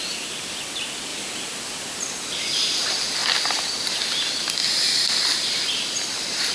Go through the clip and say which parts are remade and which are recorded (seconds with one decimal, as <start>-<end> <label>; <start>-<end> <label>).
0.0-6.5 recorded